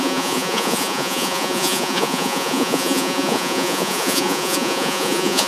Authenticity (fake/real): fake